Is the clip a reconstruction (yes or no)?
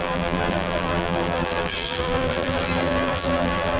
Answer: yes